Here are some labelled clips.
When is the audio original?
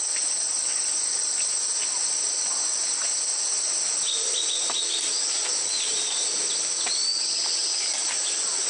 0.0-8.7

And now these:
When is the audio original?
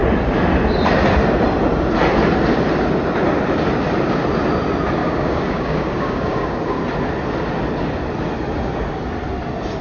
0.0-5.0; 6.8-9.8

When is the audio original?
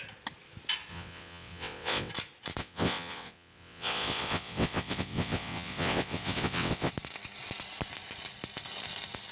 0.0-0.9; 2.1-2.6; 6.9-9.3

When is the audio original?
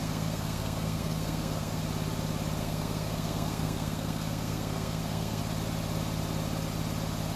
1.8-2.6; 5.4-7.4